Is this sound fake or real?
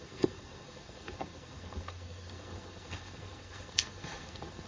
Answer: fake